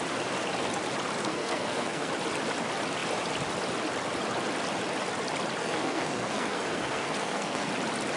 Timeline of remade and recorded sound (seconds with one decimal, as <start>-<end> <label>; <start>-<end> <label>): 0.0-1.2 recorded; 1.2-2.1 remade; 2.1-5.6 recorded; 5.6-7.7 remade; 7.7-8.2 recorded